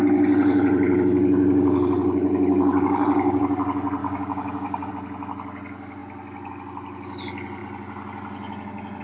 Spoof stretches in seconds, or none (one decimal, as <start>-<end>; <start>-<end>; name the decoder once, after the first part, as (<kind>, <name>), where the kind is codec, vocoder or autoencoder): 2.7-3.4 (codec, DAC); 4.0-4.9